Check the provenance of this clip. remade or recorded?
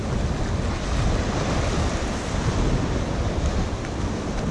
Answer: recorded